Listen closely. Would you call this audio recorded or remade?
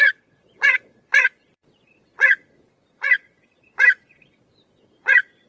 remade